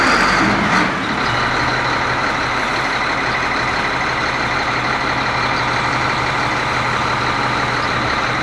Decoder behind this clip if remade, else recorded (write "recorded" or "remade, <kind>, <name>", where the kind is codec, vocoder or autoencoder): recorded